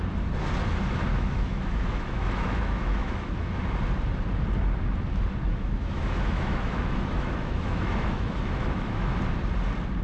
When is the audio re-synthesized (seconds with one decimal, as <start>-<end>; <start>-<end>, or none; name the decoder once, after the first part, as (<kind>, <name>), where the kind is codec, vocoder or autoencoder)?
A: 1.1-3.6 (autoencoder, DAC-VAE); 5.5-9.1